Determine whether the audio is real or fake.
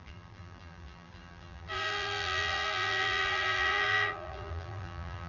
fake